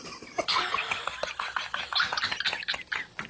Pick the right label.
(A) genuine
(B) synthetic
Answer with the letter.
A